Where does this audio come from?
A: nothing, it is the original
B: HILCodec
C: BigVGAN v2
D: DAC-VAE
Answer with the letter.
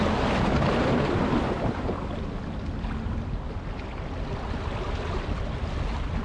A